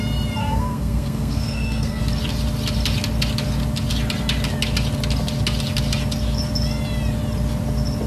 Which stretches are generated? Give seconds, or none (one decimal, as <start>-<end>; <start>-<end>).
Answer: 0.4-2.0